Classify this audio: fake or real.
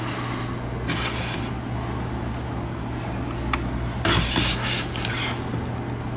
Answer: real